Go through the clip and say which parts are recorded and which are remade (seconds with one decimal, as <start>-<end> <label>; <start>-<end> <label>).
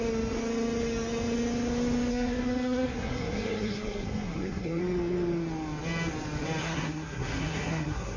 0.0-2.1 recorded; 2.1-4.8 remade; 4.8-6.6 recorded; 6.6-8.2 remade